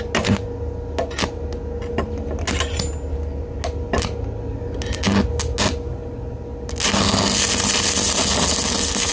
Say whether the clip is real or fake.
real